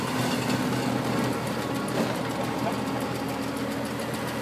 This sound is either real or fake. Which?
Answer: real